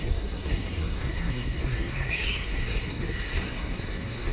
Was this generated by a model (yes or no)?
yes